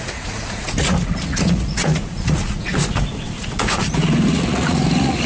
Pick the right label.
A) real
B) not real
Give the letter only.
B